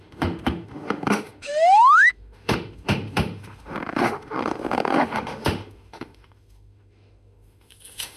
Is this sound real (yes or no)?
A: no